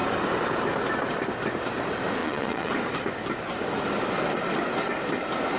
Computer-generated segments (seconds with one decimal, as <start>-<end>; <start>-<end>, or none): 2.2-2.7